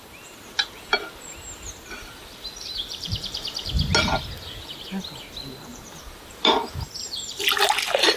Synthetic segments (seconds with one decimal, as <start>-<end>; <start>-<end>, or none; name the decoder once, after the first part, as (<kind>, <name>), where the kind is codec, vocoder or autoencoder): 0.0-1.1 (vocoder, BigVGAN v2); 2.0-3.7; 5.7-6.5